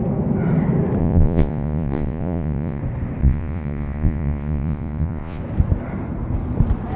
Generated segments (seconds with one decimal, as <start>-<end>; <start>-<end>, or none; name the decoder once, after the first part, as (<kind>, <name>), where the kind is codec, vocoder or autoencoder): 1.0-2.8 (vocoder, Vocos); 3.2-5.4